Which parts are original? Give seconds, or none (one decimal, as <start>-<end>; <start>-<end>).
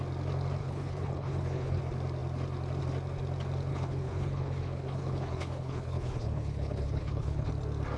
0.0-0.6; 1.8-3.7; 7.5-8.0